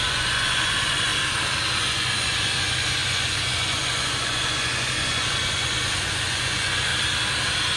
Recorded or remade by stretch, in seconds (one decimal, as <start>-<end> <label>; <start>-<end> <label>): 0.0-1.1 remade; 1.1-1.8 recorded; 1.8-6.9 remade; 6.9-7.8 recorded